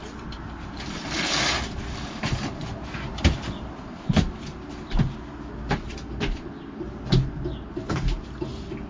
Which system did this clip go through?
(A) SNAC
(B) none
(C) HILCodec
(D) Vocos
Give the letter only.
B